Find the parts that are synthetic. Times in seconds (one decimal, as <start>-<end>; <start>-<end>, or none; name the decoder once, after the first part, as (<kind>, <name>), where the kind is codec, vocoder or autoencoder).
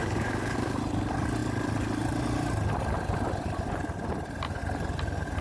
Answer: 0.0-0.8 (codec, DAC)